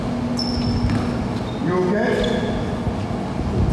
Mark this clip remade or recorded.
recorded